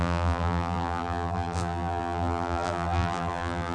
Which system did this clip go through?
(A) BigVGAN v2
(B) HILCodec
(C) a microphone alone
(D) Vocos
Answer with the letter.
A